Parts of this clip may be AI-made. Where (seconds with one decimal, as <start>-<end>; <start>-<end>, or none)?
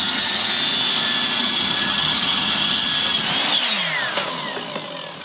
0.0-0.5; 1.4-2.9